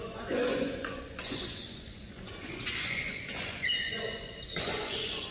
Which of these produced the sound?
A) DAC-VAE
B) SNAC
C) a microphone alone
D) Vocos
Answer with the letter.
D